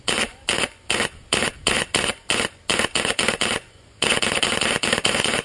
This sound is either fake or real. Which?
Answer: fake